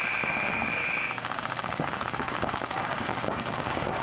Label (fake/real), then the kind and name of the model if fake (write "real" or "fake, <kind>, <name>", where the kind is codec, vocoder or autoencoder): fake, codec, DAC